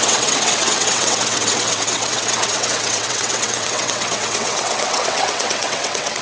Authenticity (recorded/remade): remade